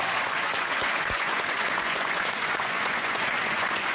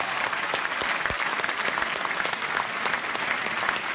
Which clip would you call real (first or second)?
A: second